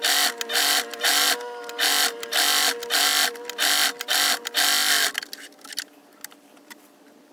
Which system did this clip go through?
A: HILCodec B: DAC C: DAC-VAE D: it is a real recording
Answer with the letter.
D